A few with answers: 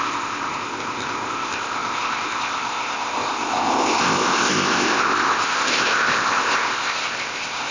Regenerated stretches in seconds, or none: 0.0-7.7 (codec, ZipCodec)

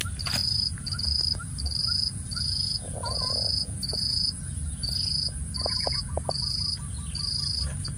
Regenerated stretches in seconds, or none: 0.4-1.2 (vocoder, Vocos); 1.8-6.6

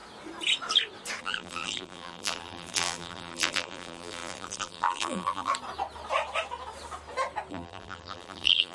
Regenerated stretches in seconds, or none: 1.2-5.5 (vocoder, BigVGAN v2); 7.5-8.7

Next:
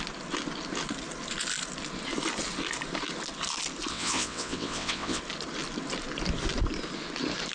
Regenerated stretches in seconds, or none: 3.9-5.2 (vocoder, WaveNeXt)

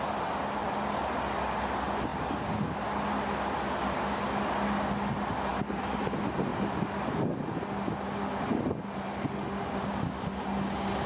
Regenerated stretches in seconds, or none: none